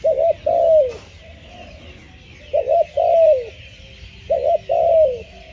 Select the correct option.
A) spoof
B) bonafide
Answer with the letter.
B